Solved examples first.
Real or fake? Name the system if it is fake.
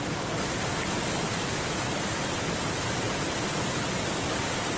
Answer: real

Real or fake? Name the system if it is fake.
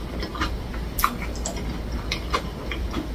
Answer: real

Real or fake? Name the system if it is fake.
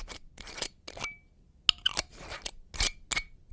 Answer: real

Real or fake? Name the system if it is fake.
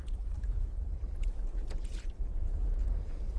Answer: fake, vocoder, Vocos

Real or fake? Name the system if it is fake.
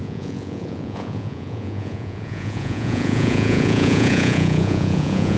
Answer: fake, vocoder, Vocos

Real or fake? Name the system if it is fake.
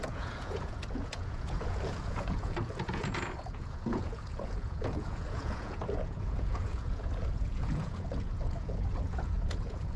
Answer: fake, vocoder, Vocos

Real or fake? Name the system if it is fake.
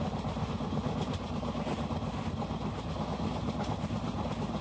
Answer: real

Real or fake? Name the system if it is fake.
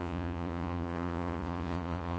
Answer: fake, vocoder, Vocos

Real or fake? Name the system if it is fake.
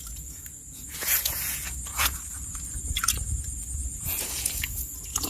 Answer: fake, vocoder, Vocos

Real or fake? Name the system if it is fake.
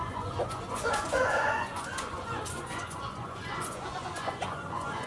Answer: fake, vocoder, Vocos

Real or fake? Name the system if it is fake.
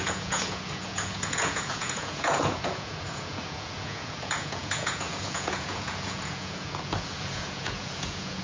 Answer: fake, vocoder, Vocos